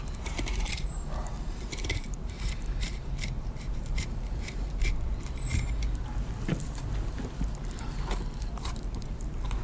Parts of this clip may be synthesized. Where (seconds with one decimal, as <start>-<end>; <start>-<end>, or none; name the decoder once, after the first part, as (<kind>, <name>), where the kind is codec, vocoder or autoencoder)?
0.0-4.9 (vocoder, BigVGAN v2); 7.6-9.6